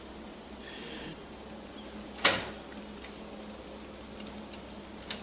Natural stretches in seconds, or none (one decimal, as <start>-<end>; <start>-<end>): 0.0-5.2